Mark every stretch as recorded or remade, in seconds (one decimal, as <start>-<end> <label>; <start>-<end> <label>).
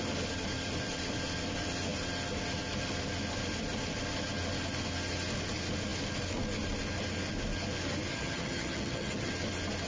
0.0-8.1 recorded; 8.1-9.3 remade; 9.3-9.9 recorded